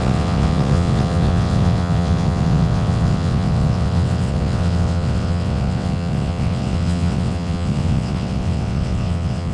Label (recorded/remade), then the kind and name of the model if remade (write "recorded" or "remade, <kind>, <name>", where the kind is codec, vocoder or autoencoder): remade, vocoder, WaveNeXt